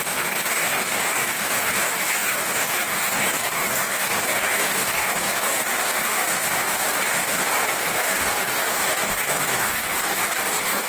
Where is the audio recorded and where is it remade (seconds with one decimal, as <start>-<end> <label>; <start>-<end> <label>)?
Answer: 0.0-10.9 remade

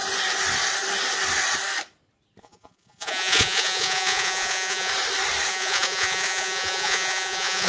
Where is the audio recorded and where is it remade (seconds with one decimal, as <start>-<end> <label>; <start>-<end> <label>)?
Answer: 0.0-2.4 recorded; 2.4-4.9 remade; 4.9-5.5 recorded; 5.5-7.7 remade

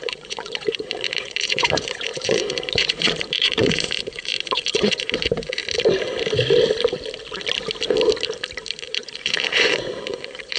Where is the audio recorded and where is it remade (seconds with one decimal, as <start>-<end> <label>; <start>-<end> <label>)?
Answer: 0.0-5.6 remade; 5.6-8.8 recorded; 8.8-10.6 remade

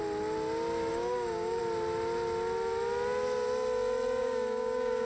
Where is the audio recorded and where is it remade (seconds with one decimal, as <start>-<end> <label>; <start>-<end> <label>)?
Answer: 0.0-0.9 recorded; 0.9-1.6 remade; 1.6-4.2 recorded; 4.2-5.1 remade

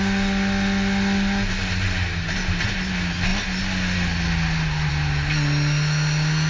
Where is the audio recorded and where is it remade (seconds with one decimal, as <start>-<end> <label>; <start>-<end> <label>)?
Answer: 0.0-6.5 recorded

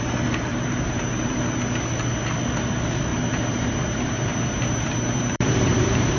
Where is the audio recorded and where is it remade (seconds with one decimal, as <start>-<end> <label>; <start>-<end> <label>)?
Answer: 0.0-0.5 recorded; 0.5-1.4 remade; 1.4-3.1 recorded; 3.1-6.2 remade

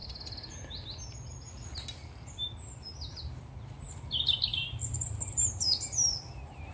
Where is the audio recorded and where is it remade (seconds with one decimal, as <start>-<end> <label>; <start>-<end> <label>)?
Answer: 0.0-4.5 recorded; 4.5-6.7 remade

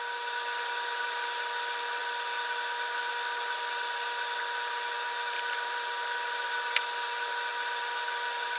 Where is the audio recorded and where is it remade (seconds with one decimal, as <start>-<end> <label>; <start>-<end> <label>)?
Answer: 0.0-8.6 recorded